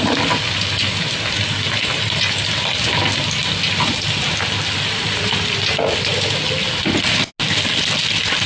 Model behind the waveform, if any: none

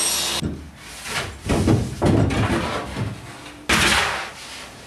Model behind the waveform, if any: none